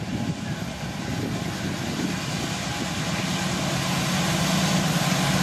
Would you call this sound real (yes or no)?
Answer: yes